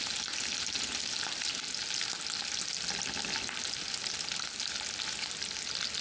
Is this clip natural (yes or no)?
yes